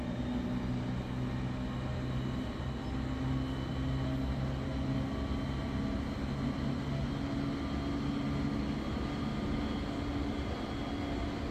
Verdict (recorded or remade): recorded